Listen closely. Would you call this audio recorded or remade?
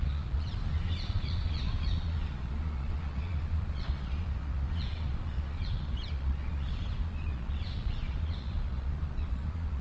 remade